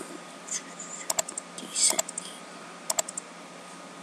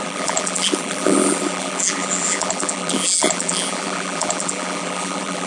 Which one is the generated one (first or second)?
second